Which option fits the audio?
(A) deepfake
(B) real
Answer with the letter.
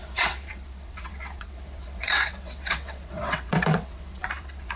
A